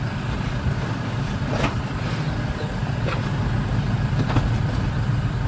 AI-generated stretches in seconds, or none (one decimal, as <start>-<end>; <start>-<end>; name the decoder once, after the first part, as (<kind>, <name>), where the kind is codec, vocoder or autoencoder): none